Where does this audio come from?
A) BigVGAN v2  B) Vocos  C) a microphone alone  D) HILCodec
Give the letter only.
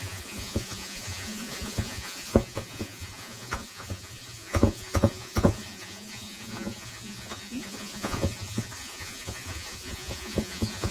B